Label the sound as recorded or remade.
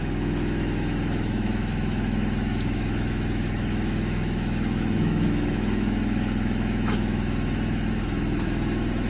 remade